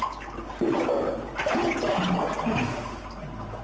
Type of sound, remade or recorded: recorded